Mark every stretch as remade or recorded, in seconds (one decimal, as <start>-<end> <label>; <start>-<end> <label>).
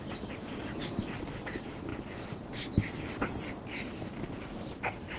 0.0-0.8 remade; 0.8-1.9 recorded; 1.9-5.2 remade